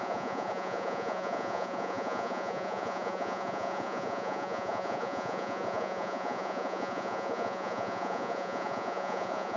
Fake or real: fake